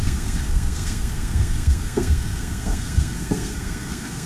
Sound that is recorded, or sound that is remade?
remade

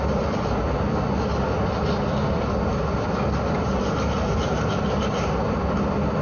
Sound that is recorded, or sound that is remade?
recorded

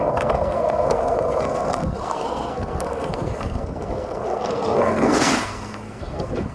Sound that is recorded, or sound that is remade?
remade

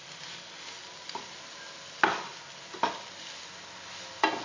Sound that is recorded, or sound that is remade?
recorded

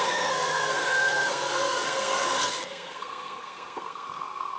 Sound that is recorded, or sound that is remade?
remade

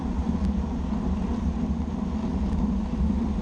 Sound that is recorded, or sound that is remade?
recorded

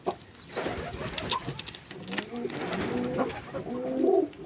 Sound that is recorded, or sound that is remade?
recorded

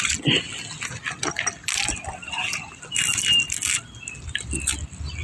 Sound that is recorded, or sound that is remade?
recorded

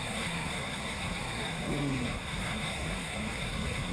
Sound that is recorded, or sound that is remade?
remade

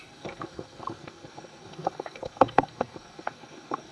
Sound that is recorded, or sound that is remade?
remade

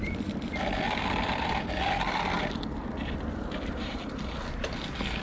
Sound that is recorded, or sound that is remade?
recorded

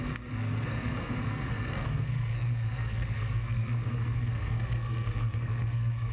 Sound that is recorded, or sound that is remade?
remade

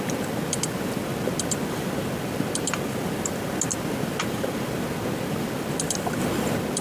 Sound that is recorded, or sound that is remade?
recorded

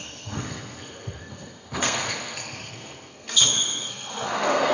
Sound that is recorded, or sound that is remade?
remade